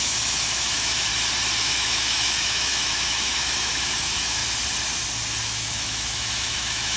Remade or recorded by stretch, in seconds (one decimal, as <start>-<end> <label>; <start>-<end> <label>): 0.0-1.1 remade; 1.1-1.6 recorded; 1.6-4.4 remade; 4.4-5.4 recorded; 5.4-7.0 remade